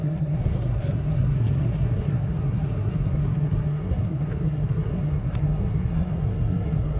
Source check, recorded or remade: remade